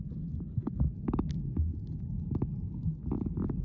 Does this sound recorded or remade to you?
recorded